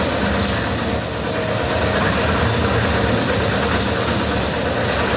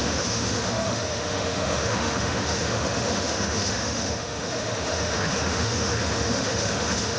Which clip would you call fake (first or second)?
second